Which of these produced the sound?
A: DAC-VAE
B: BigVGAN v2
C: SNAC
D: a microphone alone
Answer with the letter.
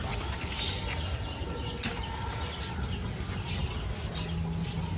D